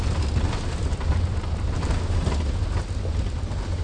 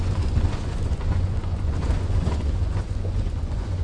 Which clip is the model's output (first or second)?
second